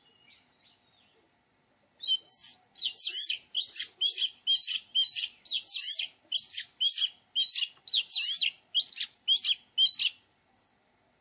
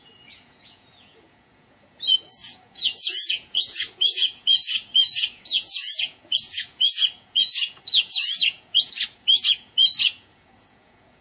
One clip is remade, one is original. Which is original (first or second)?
first